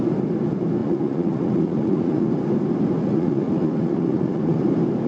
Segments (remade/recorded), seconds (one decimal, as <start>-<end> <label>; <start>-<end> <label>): 0.0-0.8 recorded; 0.8-2.3 remade; 2.3-3.0 recorded; 3.0-4.6 remade; 4.6-5.1 recorded